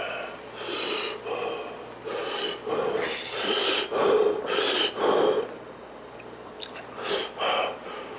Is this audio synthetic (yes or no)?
no